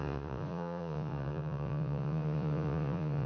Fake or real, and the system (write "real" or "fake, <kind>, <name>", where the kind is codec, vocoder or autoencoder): fake, vocoder, Vocos